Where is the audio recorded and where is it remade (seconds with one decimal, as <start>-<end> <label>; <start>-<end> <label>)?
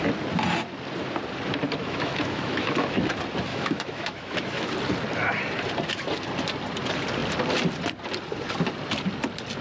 0.0-1.8 recorded; 1.8-3.1 remade; 3.1-3.5 recorded; 3.5-4.7 remade; 4.7-9.6 recorded